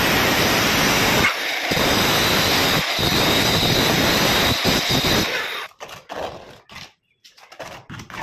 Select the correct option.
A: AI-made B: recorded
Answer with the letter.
B